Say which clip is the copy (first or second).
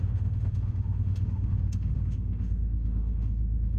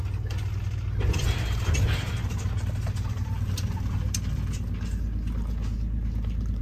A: first